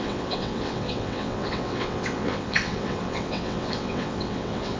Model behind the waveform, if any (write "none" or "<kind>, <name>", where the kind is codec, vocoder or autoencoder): vocoder, WaveNeXt